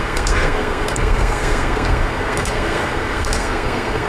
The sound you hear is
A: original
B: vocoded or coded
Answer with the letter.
B